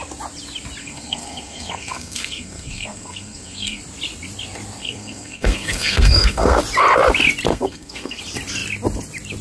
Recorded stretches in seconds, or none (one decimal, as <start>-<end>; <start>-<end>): 0.0-0.8; 3.8-4.8; 6.6-7.5; 8.2-9.4